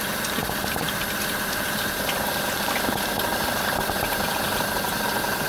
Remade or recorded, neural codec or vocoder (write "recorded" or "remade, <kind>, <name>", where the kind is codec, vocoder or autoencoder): recorded